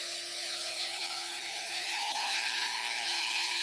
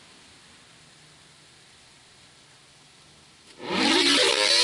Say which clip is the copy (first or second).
first